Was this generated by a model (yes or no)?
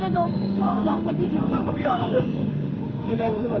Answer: yes